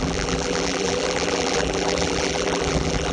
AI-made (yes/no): yes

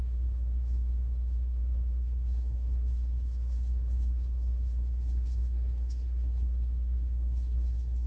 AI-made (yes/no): yes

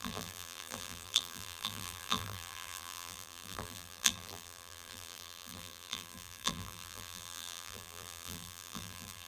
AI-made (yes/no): yes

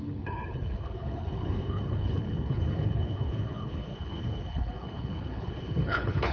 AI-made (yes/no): yes